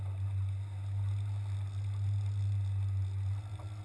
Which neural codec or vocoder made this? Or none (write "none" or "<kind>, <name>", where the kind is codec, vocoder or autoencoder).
none